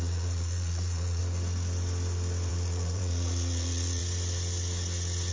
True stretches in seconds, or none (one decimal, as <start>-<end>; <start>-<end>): 1.2-2.5; 4.0-5.3